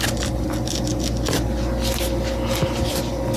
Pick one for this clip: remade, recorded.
recorded